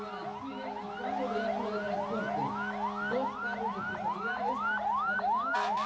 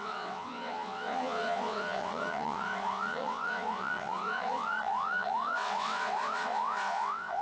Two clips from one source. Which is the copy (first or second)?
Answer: second